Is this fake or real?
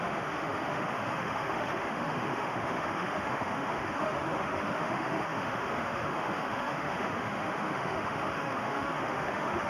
fake